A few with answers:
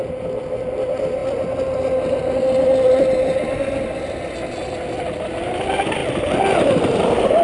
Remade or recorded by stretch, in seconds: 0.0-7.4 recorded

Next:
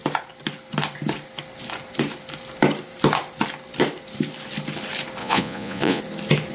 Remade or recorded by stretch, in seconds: 0.0-5.2 recorded; 5.2-6.0 remade; 6.0-6.5 recorded

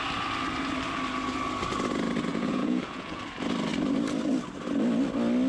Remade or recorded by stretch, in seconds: 0.0-2.3 recorded; 2.3-3.2 remade; 3.2-5.5 recorded

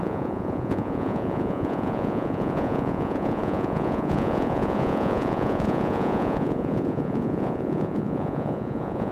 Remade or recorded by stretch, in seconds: 0.0-9.1 remade